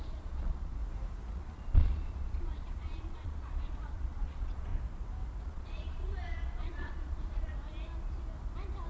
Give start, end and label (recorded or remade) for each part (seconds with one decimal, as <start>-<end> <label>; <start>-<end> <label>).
0.0-0.8 remade; 0.8-1.3 recorded; 1.3-4.7 remade; 4.7-5.4 recorded; 5.4-7.5 remade; 7.5-8.9 recorded